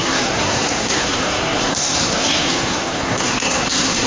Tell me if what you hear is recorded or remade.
remade